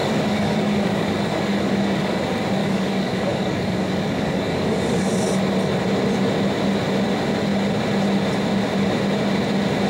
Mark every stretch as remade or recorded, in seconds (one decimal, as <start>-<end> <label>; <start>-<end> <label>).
0.0-2.2 remade; 2.2-2.6 recorded; 2.6-5.1 remade; 5.1-9.9 recorded